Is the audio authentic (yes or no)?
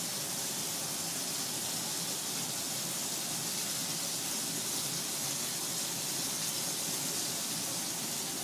yes